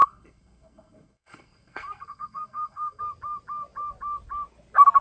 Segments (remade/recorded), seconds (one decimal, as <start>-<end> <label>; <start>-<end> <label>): 0.0-3.0 remade; 3.0-5.0 recorded